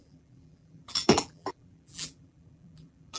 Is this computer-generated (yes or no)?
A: yes